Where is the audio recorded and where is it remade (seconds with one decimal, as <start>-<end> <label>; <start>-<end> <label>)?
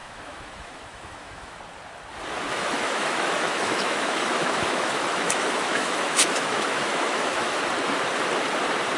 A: 0.0-1.6 remade; 1.6-2.5 recorded; 2.5-7.6 remade; 7.6-9.0 recorded